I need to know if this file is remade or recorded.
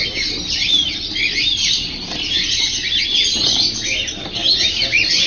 recorded